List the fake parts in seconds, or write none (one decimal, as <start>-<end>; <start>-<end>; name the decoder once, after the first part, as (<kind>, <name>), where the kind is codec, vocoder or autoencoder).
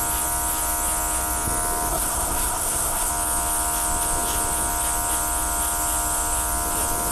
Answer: 1.9-3.1 (codec, SNAC)